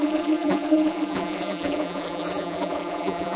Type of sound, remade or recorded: remade